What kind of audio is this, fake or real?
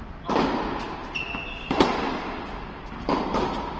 fake